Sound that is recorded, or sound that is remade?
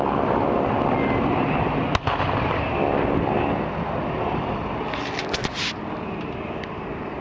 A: recorded